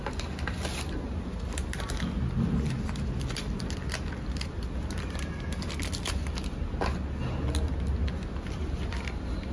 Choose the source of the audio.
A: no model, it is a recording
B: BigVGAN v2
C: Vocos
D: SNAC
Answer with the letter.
A